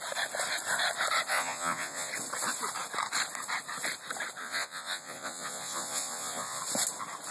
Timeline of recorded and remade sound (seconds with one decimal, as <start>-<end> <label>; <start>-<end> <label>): 0.0-1.3 recorded; 1.3-2.1 remade; 2.1-4.4 recorded; 4.4-6.6 remade; 6.6-7.3 recorded